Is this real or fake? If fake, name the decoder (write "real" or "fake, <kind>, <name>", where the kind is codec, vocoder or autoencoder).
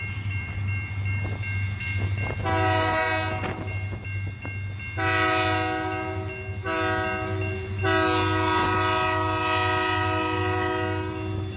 real